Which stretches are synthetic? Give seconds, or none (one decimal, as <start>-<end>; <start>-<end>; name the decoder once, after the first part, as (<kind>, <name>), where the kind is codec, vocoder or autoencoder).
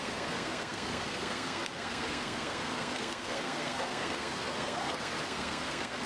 0.0-6.1 (codec, SNAC)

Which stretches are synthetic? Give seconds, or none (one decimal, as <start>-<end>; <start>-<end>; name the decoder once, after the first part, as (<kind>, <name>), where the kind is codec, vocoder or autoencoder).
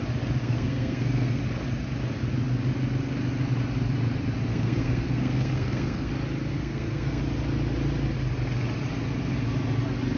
0.4-1.4 (codec, SNAC); 4.5-6.1; 6.5-7.2